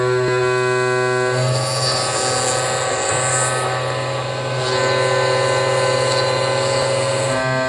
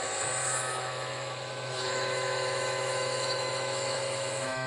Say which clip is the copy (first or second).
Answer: second